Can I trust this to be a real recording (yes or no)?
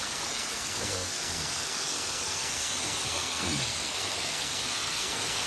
no